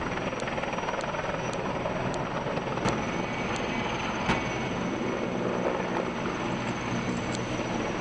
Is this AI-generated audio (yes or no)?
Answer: no